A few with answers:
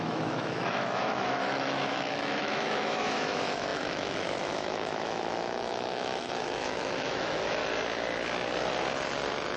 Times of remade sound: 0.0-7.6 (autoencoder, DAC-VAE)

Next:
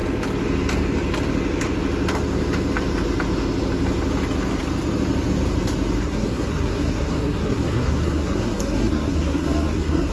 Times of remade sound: 6.0-10.1 (codec, SNAC)

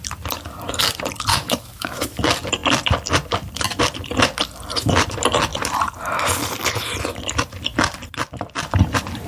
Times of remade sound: 1.3-2.2 (autoencoder, DAC-VAE)

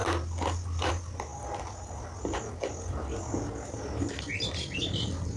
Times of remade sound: none

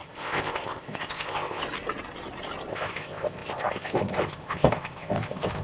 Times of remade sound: 0.0-1.6 (codec, ZipCodec); 2.7-5.6